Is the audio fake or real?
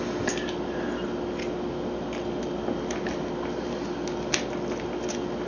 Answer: real